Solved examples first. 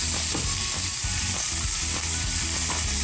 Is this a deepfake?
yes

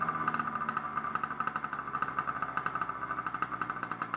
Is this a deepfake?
no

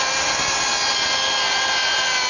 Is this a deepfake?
no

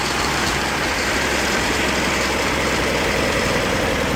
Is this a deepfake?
yes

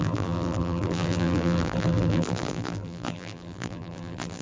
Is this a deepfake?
yes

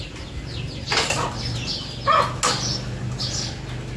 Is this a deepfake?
no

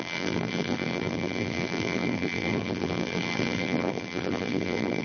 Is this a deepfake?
yes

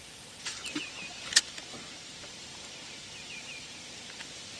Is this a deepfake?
yes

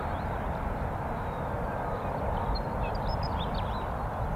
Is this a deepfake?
no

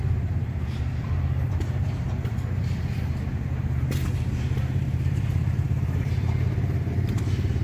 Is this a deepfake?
yes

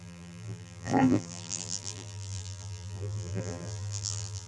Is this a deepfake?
yes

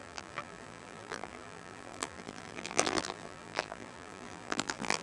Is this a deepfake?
yes